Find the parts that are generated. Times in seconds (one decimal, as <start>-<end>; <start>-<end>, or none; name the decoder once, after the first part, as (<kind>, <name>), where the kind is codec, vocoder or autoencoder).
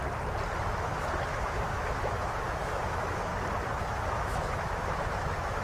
0.6-3.3 (autoencoder, DAC-VAE); 3.8-5.6